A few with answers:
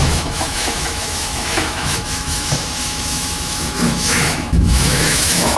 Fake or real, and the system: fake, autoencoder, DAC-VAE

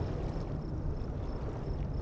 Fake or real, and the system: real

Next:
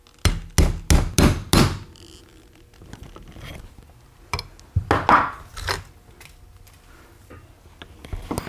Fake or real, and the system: real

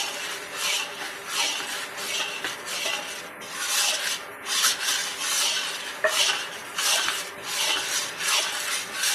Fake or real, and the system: real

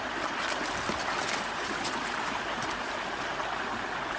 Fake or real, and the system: real